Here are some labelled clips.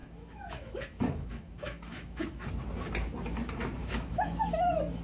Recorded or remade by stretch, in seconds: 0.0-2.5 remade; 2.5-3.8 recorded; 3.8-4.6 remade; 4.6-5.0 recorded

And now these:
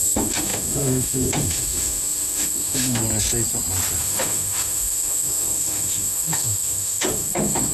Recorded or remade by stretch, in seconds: 0.0-3.0 remade; 3.0-4.0 recorded; 4.0-7.7 remade

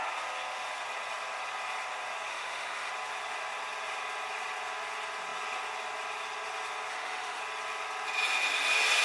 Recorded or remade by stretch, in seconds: 0.0-2.3 recorded; 2.3-2.9 remade; 2.9-6.9 recorded; 6.9-7.4 remade; 7.4-9.0 recorded